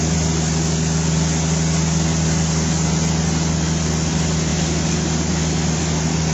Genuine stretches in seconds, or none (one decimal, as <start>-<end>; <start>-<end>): 0.0-6.3